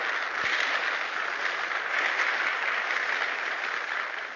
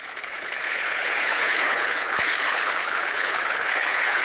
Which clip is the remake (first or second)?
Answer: second